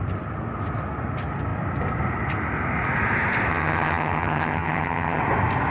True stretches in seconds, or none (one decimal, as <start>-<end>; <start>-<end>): 0.0-3.5; 5.2-5.7